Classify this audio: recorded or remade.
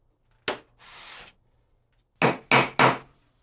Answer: recorded